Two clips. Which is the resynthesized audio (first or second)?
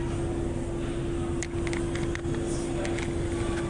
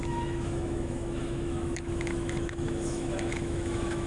second